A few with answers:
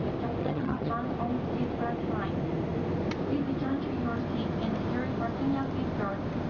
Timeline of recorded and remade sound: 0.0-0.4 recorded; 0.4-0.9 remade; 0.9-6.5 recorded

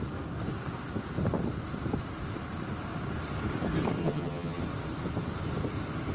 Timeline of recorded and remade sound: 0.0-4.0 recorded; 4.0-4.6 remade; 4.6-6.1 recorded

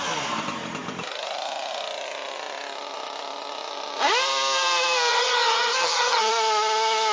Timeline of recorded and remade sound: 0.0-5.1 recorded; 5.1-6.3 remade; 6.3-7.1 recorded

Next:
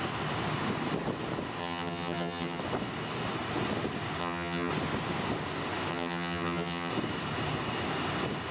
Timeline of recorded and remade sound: 0.0-1.6 recorded; 1.6-2.6 remade; 2.6-4.2 recorded; 4.2-4.7 remade; 4.7-5.9 recorded; 5.9-6.9 remade; 6.9-8.5 recorded

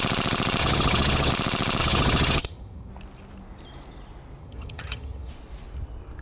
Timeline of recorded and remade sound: 0.0-0.6 recorded; 0.6-1.3 remade; 1.3-1.8 recorded; 1.8-2.9 remade; 2.9-4.4 recorded; 4.4-5.3 remade; 5.3-6.2 recorded

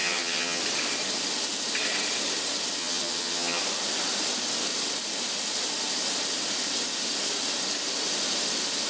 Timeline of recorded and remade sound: 0.0-0.6 remade; 0.6-2.8 recorded; 2.8-3.6 remade; 3.6-8.9 recorded

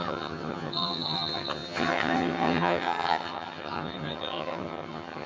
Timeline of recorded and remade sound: 0.0-5.3 remade

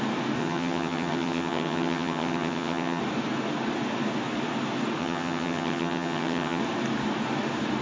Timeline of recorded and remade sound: 0.0-0.4 recorded; 0.4-3.0 remade; 3.0-5.0 recorded; 5.0-6.6 remade; 6.6-7.8 recorded